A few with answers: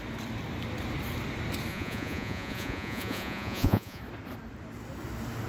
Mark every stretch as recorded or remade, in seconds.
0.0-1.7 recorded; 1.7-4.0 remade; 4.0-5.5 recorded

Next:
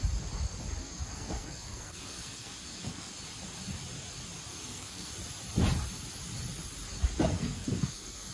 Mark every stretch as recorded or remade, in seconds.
0.0-0.8 recorded; 0.8-3.1 remade; 3.1-4.5 recorded; 4.5-5.1 remade; 5.1-7.3 recorded; 7.3-8.3 remade

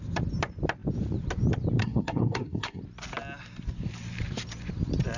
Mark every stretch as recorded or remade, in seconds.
0.0-1.8 recorded; 1.8-2.8 remade; 2.8-5.2 recorded

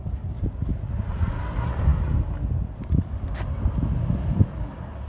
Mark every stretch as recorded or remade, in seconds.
0.0-0.7 recorded; 0.7-1.4 remade; 1.4-5.1 recorded

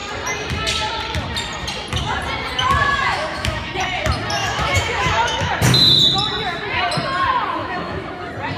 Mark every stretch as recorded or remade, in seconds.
0.0-2.8 recorded; 2.8-3.7 remade; 3.7-4.4 recorded; 4.4-5.5 remade; 5.5-7.6 recorded; 7.6-8.2 remade; 8.2-8.6 recorded

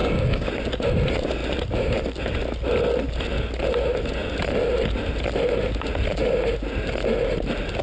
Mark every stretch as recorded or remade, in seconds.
0.0-0.5 remade; 0.5-7.8 recorded